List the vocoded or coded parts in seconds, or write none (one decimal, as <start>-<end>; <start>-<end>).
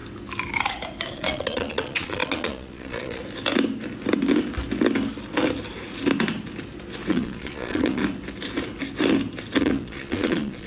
1.1-3.2; 7.1-8.0; 9.6-10.7